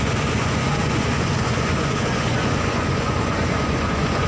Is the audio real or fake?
fake